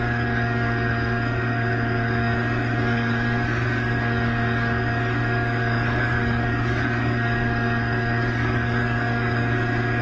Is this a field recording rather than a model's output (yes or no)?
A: no